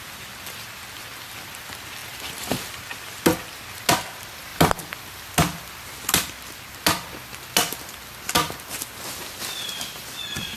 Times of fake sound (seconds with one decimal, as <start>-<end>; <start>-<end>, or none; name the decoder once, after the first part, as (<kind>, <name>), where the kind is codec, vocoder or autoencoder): none